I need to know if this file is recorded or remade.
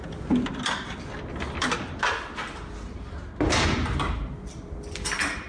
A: recorded